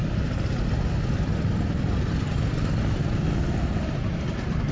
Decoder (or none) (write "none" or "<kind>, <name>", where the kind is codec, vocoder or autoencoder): none